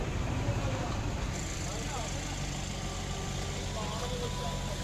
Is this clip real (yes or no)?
yes